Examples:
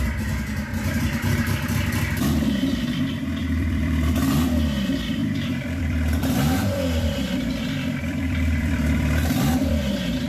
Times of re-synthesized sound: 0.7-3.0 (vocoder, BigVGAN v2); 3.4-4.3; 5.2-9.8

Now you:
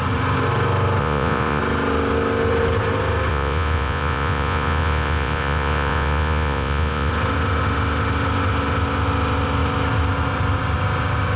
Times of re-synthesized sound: 1.0-1.6 (vocoder, Vocos); 3.3-7.1

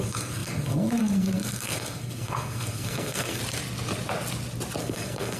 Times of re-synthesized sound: 0.0-3.4 (codec, SNAC); 4.8-5.4

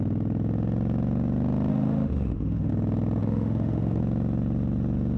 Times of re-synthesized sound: 1.7-2.7 (autoencoder, DAC-VAE); 3.2-4.0

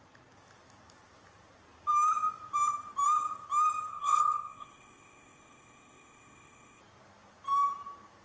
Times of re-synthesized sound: 3.9-6.8 (codec, ZipCodec)

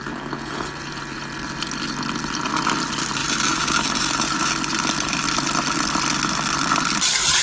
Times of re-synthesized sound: 3.2-4.5 (vocoder, BigVGAN v2)